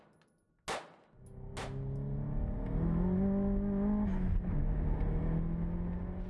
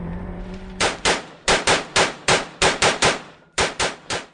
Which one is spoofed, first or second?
second